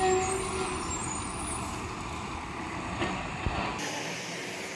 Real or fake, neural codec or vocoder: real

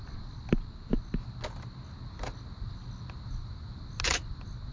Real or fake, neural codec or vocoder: real